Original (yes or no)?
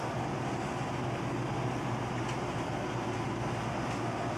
yes